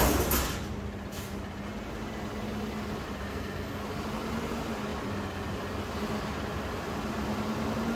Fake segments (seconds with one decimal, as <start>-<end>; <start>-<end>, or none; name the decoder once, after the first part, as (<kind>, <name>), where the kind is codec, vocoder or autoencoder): 3.3-3.8 (codec, SNAC)